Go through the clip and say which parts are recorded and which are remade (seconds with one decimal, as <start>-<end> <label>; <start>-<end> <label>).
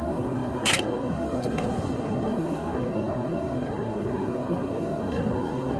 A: 0.0-5.8 remade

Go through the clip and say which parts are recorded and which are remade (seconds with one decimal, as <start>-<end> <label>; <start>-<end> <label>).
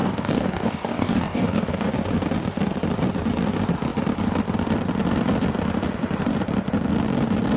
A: 0.0-1.9 remade; 1.9-7.6 recorded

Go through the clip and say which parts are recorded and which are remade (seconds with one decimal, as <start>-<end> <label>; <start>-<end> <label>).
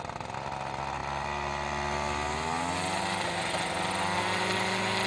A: 0.0-1.0 recorded; 1.0-1.7 remade; 1.7-5.1 recorded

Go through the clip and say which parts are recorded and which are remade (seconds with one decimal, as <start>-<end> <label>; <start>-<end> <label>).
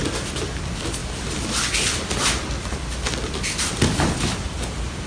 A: 0.0-5.1 recorded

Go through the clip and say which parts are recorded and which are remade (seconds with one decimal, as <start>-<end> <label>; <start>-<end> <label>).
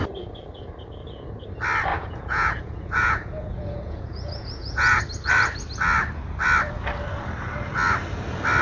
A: 0.0-1.9 recorded; 1.9-5.0 remade; 5.0-8.6 recorded